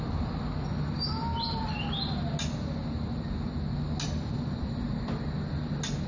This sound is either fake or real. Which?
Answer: real